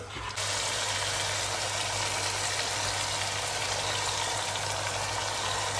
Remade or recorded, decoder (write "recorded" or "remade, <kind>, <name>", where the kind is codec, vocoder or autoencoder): recorded